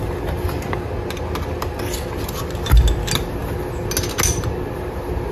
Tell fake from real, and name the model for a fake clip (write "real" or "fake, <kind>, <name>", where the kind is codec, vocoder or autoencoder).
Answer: real